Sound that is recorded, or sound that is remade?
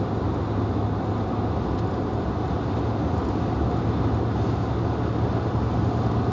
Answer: recorded